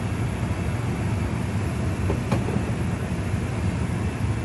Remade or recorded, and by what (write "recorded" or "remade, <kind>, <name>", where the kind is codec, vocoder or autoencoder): recorded